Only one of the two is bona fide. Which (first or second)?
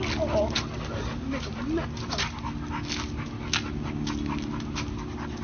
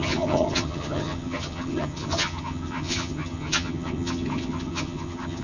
first